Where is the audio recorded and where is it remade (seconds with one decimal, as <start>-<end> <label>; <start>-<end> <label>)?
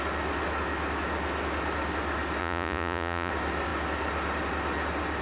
0.0-2.4 recorded; 2.4-3.3 remade; 3.3-5.2 recorded